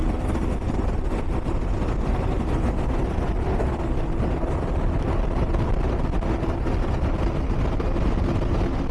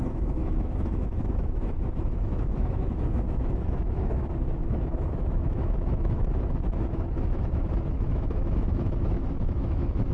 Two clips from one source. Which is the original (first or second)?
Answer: first